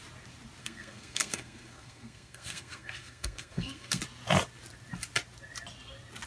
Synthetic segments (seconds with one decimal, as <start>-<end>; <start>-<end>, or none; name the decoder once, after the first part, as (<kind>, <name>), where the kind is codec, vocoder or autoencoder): 0.6-4.0 (codec, SNAC)